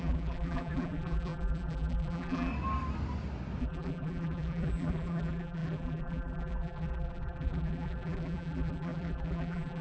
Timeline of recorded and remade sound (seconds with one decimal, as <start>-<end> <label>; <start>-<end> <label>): 0.0-2.5 remade; 2.5-3.6 recorded; 3.6-9.8 remade

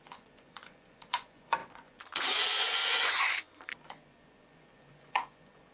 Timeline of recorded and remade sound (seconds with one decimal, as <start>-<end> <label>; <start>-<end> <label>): 0.0-5.7 remade

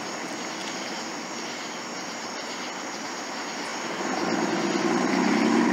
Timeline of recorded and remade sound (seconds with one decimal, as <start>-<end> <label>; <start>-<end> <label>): 0.0-5.7 recorded